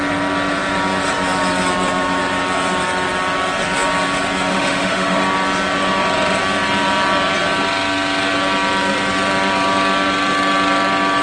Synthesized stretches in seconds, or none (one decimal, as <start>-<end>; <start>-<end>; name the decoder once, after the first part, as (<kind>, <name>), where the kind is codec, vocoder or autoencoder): 4.5-5.2 (autoencoder, DAC-VAE)